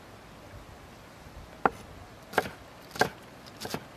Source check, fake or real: real